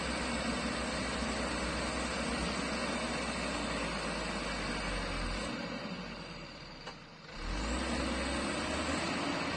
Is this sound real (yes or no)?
yes